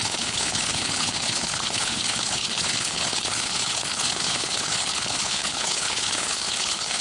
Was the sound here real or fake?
fake